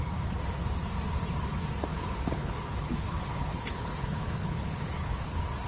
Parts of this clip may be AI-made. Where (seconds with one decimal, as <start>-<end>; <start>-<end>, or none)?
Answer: 1.9-5.3